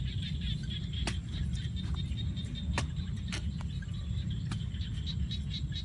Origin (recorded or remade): recorded